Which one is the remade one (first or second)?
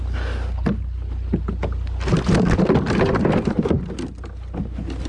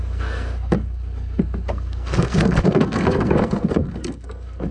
second